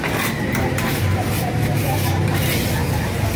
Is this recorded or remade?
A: recorded